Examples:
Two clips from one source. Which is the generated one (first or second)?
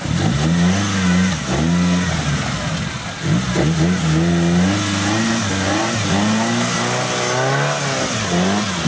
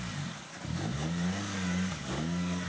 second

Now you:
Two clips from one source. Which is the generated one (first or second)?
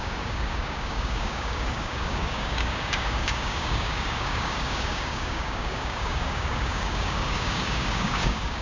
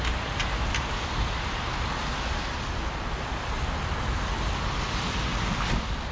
first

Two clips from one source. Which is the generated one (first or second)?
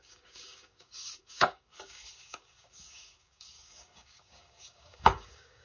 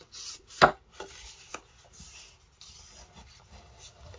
first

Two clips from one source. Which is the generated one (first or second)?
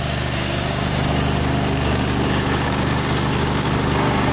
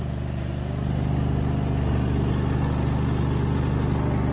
first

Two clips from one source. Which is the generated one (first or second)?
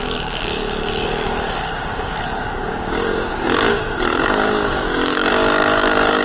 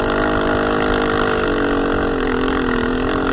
first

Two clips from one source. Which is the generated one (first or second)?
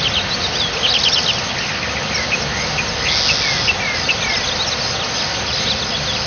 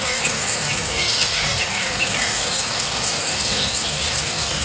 second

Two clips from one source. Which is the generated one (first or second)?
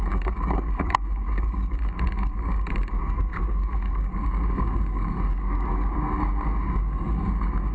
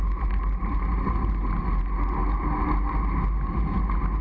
first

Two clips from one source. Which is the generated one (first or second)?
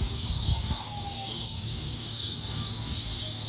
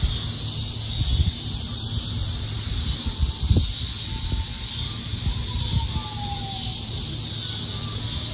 first